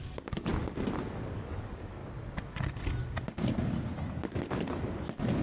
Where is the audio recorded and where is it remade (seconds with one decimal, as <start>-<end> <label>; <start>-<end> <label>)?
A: 0.0-0.5 remade; 0.5-1.3 recorded; 1.3-2.0 remade; 2.0-5.0 recorded; 5.0-5.4 remade